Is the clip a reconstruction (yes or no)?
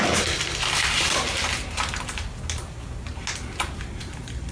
no